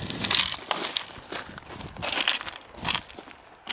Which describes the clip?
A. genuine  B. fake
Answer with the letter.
A